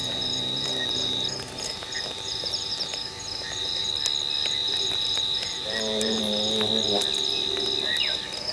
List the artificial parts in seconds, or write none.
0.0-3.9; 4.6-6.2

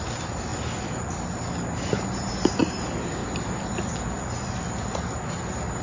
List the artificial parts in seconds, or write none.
0.0-0.5; 2.8-3.2